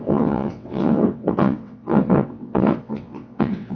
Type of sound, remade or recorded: remade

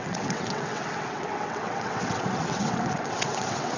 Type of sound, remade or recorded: remade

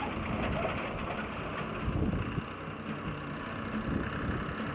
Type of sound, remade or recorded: recorded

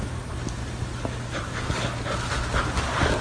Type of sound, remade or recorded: recorded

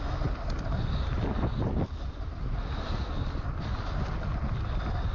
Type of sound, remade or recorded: recorded